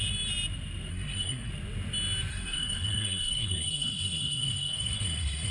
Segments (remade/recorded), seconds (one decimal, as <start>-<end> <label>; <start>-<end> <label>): 0.0-0.9 recorded; 0.9-1.5 remade; 1.5-2.3 recorded; 2.3-5.5 remade